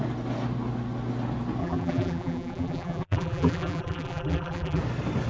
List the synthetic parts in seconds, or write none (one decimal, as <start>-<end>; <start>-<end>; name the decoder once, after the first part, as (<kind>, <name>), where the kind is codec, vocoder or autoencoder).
1.6-4.8 (vocoder, BigVGAN v2)